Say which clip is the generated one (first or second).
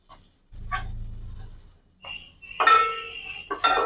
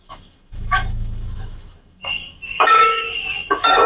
second